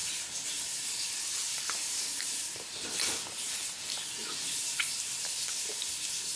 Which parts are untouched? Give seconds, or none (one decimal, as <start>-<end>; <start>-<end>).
3.2-4.2; 5.3-6.4